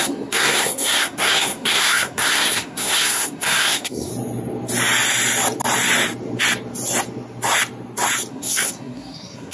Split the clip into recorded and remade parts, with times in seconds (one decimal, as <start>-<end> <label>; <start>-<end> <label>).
0.0-4.1 remade; 4.1-8.3 recorded; 8.3-9.5 remade